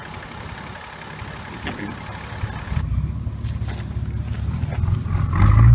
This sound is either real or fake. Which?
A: real